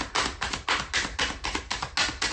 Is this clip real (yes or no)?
yes